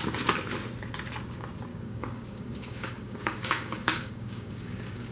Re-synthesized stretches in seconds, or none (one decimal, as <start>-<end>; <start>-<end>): 1.7-5.1